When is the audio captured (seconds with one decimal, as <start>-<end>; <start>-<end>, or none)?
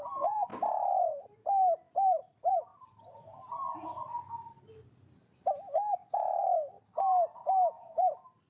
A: 1.0-1.9; 6.4-7.4